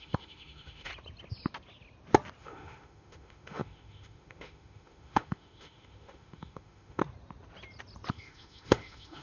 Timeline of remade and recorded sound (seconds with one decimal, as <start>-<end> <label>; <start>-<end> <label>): 0.0-0.9 remade; 0.9-2.4 recorded; 2.4-7.0 remade; 7.0-8.1 recorded; 8.1-9.2 remade